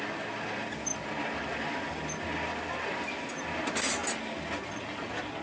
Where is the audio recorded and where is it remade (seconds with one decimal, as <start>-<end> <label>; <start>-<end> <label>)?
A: 0.0-5.4 recorded